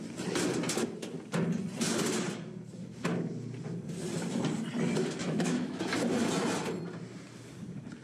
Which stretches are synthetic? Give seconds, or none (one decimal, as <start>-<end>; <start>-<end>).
5.2-5.8